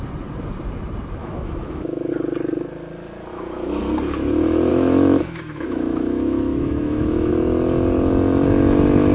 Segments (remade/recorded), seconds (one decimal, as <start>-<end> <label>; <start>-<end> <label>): 0.0-1.2 recorded; 1.2-2.1 remade; 2.1-3.3 recorded; 3.3-3.8 remade; 3.8-4.7 recorded; 4.7-7.3 remade; 7.3-9.1 recorded